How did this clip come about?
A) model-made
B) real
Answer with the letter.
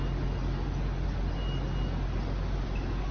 B